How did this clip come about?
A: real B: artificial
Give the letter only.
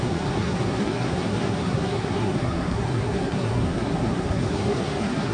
B